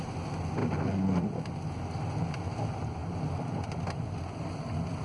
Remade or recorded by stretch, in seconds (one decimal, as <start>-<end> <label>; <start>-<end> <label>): 0.0-5.0 recorded